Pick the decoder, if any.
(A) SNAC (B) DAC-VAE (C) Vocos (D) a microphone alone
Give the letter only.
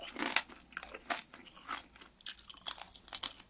D